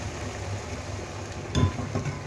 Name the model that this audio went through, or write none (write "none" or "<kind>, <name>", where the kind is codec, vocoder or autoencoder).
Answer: none